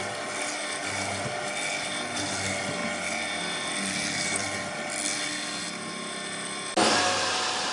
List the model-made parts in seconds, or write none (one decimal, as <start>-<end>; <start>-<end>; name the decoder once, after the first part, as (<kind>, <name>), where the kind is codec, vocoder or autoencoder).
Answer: none